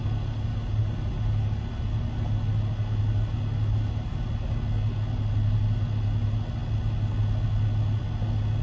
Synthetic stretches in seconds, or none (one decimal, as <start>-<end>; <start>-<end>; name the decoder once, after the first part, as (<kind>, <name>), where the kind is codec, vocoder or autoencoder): none